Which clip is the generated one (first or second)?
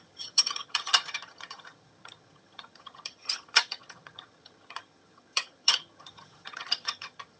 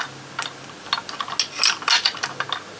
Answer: first